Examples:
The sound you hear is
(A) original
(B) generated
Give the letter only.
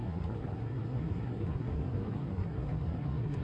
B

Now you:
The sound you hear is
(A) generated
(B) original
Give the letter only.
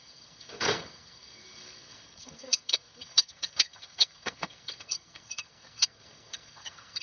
A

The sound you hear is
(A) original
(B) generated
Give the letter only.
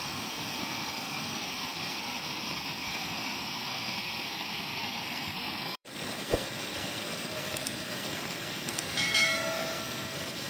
B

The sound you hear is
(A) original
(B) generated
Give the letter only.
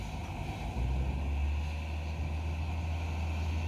A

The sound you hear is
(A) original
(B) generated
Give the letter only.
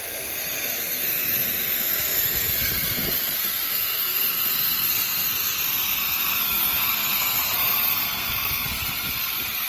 B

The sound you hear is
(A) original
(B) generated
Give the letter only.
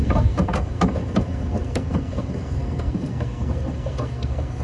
B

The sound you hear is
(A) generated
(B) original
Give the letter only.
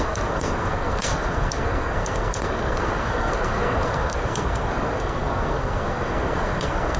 A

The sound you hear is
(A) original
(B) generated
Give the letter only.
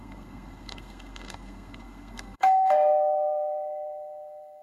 B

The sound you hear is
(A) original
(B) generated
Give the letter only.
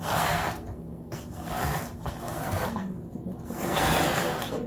B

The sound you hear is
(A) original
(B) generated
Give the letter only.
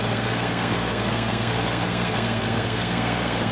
B